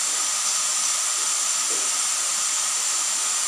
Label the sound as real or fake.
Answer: real